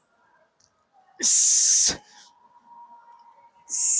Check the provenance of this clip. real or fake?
real